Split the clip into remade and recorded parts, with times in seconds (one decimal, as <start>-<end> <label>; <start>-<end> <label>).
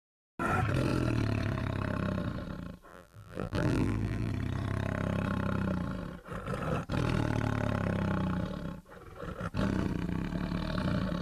0.0-2.9 recorded; 2.9-4.3 remade; 4.3-11.2 recorded